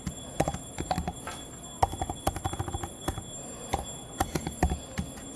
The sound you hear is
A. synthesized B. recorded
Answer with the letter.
B